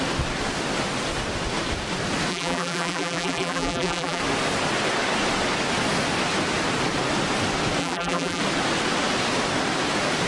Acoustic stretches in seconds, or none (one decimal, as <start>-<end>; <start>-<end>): 0.0-2.3; 4.2-7.8; 8.4-10.3